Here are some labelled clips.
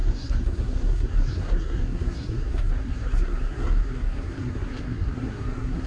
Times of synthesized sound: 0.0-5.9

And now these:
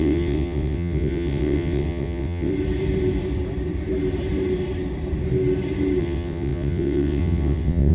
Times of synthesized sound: 0.0-2.5; 6.0-7.9

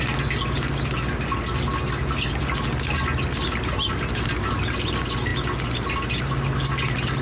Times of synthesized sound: none

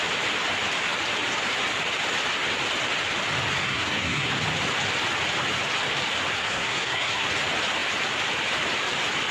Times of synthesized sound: 3.6-4.3; 6.4-7.3

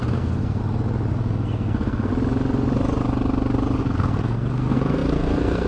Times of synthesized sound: 0.0-0.6; 1.1-2.1; 3.8-5.7

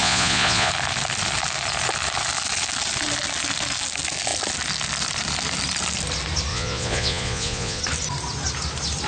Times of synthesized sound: 0.0-0.7; 6.5-7.8

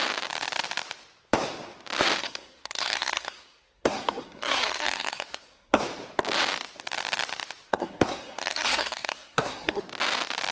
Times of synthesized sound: 2.2-5.8; 7.7-9.8